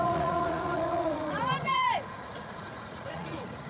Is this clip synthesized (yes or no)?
yes